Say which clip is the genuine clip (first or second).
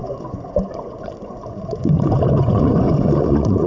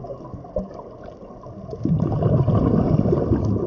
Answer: second